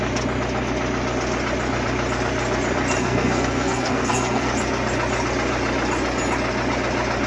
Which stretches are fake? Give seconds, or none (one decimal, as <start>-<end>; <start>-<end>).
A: 3.0-4.5